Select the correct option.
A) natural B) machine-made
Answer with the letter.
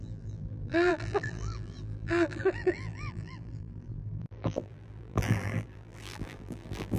B